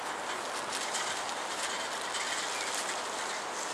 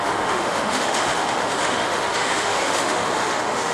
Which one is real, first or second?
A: first